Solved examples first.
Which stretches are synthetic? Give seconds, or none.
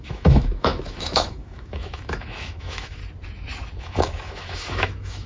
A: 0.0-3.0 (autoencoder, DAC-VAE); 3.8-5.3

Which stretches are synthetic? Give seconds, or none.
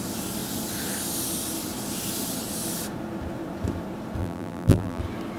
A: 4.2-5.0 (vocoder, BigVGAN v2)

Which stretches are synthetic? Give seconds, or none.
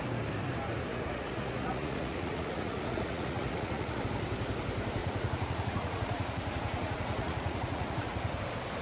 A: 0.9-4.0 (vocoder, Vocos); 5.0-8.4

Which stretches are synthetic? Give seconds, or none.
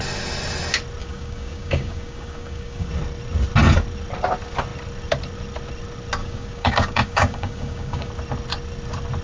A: 1.0-2.9 (codec, DAC); 6.2-8.1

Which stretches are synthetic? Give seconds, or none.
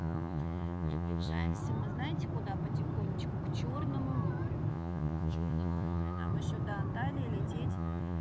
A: 0.0-1.6 (vocoder, Vocos); 4.7-6.3; 7.7-8.2